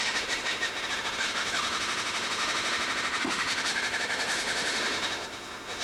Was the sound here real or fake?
fake